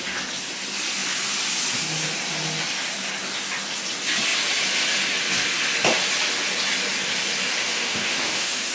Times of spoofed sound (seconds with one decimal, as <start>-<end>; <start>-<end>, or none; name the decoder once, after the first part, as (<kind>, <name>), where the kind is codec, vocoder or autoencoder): 7.6-8.7 (autoencoder, DAC-VAE)